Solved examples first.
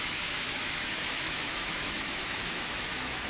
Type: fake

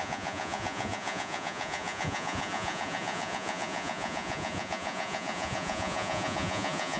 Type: fake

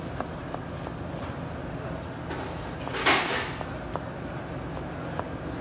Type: real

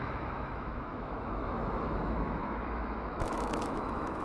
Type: fake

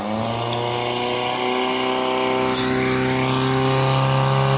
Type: real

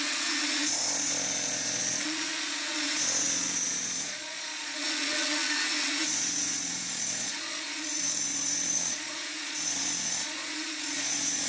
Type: fake